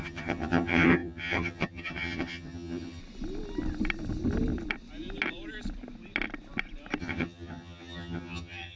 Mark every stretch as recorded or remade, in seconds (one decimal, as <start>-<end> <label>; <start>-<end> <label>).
0.0-3.0 remade; 3.0-7.0 recorded; 7.0-8.8 remade